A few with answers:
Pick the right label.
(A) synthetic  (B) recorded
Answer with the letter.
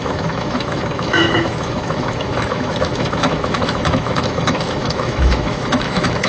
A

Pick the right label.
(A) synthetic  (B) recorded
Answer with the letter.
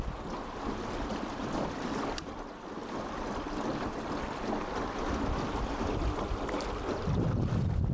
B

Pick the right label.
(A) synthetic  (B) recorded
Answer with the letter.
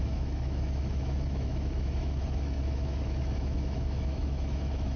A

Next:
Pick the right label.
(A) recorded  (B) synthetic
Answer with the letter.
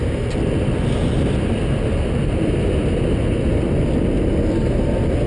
A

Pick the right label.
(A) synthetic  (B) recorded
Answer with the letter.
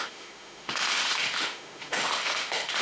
A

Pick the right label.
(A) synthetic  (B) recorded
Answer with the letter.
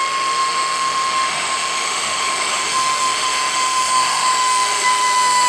A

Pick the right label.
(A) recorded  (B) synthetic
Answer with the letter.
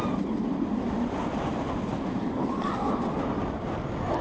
A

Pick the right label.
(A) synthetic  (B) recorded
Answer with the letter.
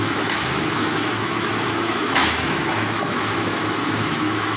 A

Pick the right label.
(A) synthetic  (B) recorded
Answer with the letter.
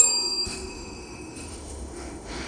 A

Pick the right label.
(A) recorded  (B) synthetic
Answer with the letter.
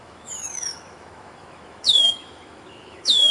B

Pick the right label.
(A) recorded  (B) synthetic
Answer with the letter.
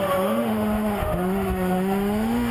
B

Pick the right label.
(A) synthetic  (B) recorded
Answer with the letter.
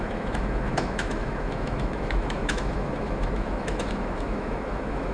A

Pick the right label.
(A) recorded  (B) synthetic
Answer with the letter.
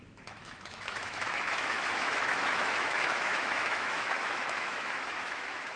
B